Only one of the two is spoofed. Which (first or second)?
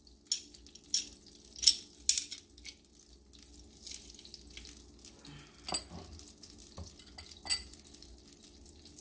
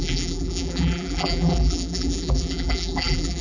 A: second